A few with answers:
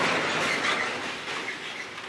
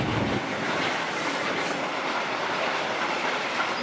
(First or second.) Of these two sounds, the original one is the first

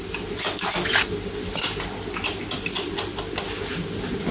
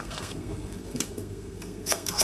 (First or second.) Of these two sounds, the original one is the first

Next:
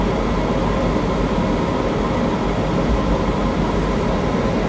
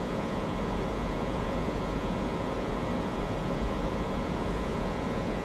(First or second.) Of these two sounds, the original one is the first